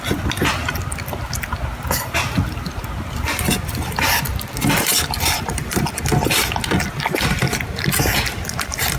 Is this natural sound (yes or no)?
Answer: yes